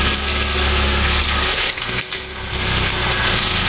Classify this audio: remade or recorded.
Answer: remade